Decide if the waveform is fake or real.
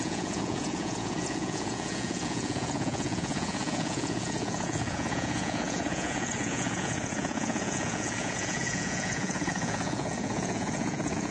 fake